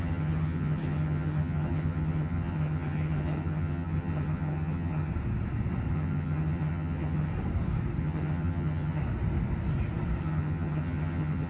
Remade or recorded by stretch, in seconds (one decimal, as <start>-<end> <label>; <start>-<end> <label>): 0.0-5.1 remade; 5.1-5.9 recorded; 5.9-7.3 remade; 7.3-8.0 recorded; 8.0-9.0 remade; 9.0-10.2 recorded; 10.2-11.5 remade